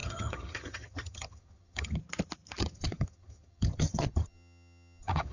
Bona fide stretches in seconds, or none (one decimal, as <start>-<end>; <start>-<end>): 2.0-2.6